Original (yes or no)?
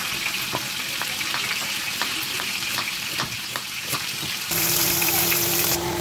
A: no